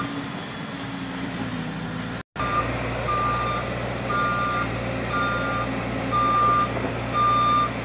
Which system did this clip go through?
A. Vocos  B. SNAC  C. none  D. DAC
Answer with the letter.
C